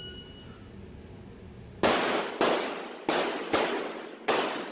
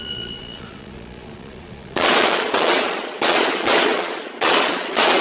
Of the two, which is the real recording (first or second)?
first